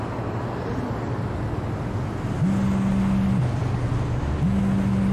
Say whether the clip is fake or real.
real